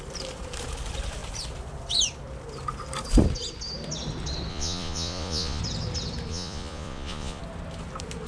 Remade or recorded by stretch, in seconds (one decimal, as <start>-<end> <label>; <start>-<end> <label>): 0.0-4.5 recorded; 4.5-5.6 remade; 5.6-6.3 recorded; 6.3-7.4 remade; 7.4-8.3 recorded